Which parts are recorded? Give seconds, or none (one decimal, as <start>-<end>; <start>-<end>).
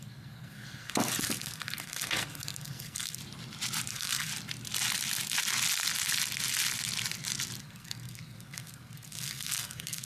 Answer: 3.2-3.9; 4.3-7.6